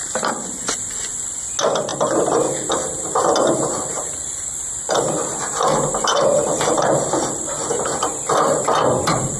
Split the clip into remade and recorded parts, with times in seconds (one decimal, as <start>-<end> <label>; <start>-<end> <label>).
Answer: 0.0-1.9 recorded; 1.9-7.1 remade; 7.1-8.1 recorded; 8.1-9.4 remade

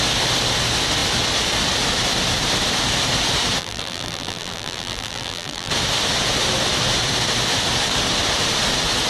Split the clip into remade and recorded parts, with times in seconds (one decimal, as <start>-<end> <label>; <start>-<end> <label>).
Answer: 0.0-3.6 recorded; 3.6-5.7 remade; 5.7-9.1 recorded

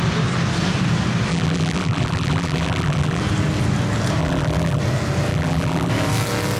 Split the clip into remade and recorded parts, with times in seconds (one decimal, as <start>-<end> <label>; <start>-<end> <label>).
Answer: 0.0-1.3 recorded; 1.3-3.2 remade; 3.2-4.2 recorded; 4.2-4.8 remade; 4.8-5.3 recorded; 5.3-5.9 remade; 5.9-6.6 recorded